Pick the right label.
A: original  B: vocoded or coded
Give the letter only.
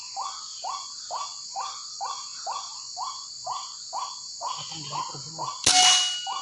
A